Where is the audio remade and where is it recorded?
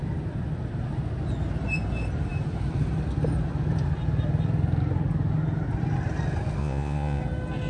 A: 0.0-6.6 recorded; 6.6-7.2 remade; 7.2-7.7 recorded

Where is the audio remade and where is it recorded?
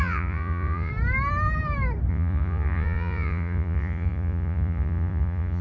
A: 0.0-0.9 remade; 0.9-2.1 recorded; 2.1-5.6 remade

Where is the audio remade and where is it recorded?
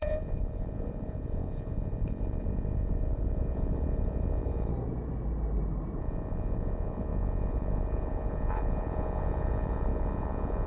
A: 0.0-4.7 remade; 4.7-6.0 recorded; 6.0-10.7 remade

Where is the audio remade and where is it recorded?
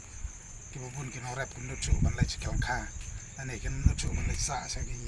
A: 0.0-0.6 remade; 0.6-3.7 recorded; 3.7-5.1 remade